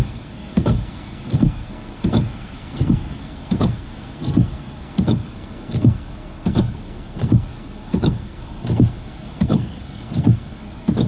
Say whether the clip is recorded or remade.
remade